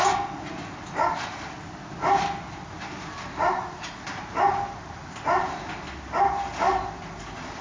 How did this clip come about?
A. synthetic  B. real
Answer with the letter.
B